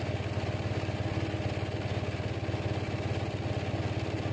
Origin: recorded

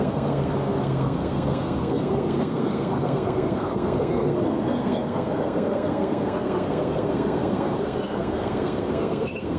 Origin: remade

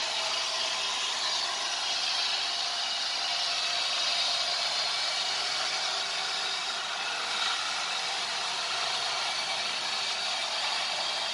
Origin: recorded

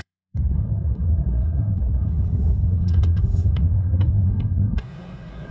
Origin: remade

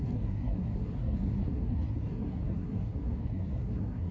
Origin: remade